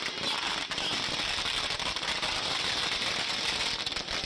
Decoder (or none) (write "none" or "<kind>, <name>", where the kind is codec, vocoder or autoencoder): none